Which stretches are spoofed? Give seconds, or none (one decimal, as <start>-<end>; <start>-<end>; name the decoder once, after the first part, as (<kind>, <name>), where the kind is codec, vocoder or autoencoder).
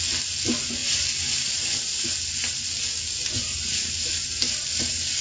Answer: none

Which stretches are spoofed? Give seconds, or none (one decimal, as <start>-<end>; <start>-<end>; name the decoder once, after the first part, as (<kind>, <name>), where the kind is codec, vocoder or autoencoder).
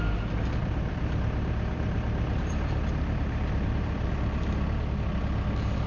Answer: 0.6-4.1 (vocoder, BigVGAN v2)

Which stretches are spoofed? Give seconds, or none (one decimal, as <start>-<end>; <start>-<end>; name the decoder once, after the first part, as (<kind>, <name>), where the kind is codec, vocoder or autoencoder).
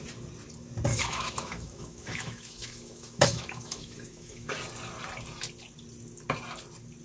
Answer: 0.9-4.5 (autoencoder, DAC-VAE)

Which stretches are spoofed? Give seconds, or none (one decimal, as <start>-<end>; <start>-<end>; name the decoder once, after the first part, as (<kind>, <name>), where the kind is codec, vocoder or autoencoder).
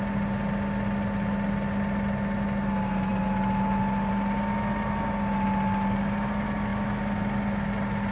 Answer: none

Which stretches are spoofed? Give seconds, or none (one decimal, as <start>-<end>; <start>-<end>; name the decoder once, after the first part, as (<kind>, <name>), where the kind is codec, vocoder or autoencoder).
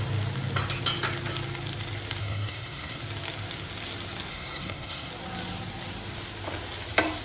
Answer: 2.2-3.0 (codec, SNAC); 4.3-5.1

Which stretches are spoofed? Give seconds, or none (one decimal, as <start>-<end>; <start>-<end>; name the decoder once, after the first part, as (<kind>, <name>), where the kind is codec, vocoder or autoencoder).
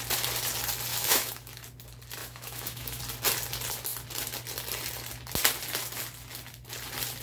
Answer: 0.9-1.5 (autoencoder, DAC-VAE); 2.2-3.0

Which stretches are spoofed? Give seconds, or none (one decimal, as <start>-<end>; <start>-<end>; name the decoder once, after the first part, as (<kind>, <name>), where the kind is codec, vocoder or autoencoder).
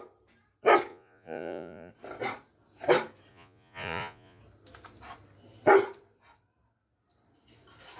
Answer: 0.9-1.9 (vocoder, Vocos); 3.3-4.4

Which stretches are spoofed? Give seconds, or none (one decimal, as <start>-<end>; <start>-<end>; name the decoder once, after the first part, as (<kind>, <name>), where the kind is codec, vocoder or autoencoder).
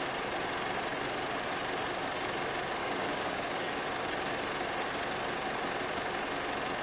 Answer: 2.8-3.8 (codec, DAC)